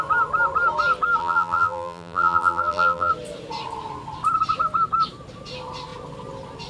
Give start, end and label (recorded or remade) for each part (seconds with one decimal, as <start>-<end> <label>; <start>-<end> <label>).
0.0-1.2 recorded; 1.2-3.1 remade; 3.1-6.7 recorded